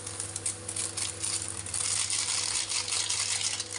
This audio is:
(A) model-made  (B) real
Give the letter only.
B